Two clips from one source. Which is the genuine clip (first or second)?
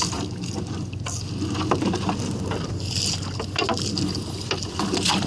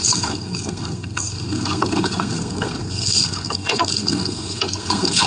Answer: first